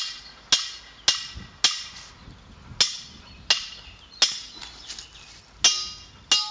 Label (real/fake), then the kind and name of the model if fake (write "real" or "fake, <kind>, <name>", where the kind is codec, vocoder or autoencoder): real